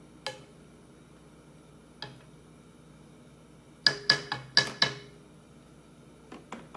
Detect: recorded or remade recorded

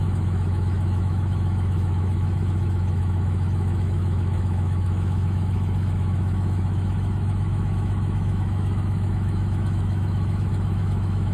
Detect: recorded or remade remade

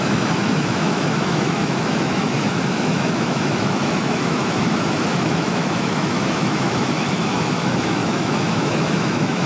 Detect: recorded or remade remade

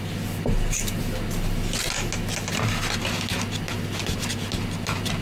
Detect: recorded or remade recorded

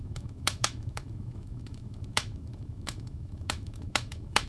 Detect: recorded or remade remade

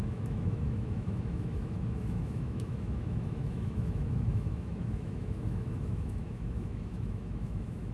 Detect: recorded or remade remade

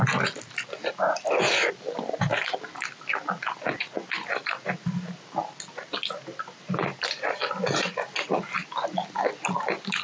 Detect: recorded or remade recorded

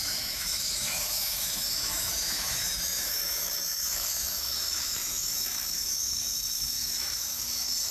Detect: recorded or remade remade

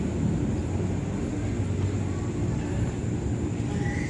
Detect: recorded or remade recorded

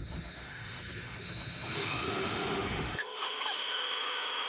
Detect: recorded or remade remade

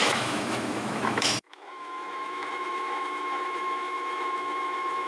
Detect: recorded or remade remade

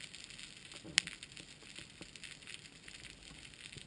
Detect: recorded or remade recorded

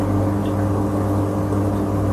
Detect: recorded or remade recorded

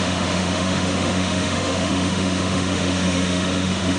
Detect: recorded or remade remade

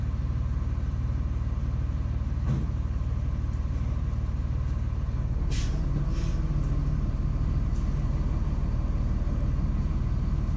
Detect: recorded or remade recorded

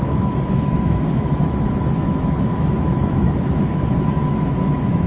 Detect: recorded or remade remade